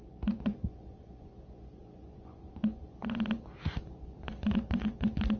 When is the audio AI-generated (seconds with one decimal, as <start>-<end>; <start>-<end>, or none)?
0.0-5.4